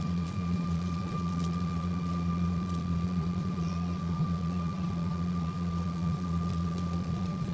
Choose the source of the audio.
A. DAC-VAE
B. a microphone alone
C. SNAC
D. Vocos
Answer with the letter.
D